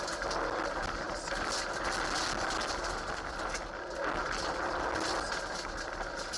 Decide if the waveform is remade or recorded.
recorded